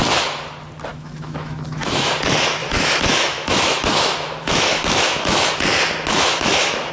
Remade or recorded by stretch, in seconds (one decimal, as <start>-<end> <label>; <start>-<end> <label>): 0.0-0.9 recorded; 0.9-2.1 remade; 2.1-2.6 recorded; 2.6-5.5 remade; 5.5-6.1 recorded; 6.1-6.9 remade